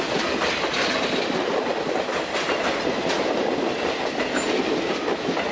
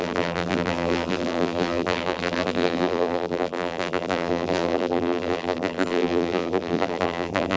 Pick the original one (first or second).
first